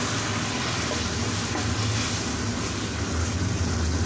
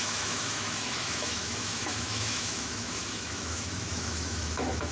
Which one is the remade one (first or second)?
second